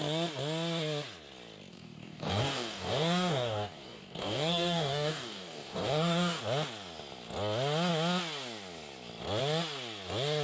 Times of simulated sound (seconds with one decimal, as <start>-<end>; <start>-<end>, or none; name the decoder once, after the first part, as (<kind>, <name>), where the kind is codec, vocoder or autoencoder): 1.7-6.4 (codec, DAC)